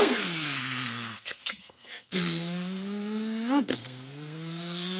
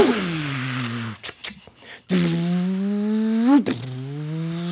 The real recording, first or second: second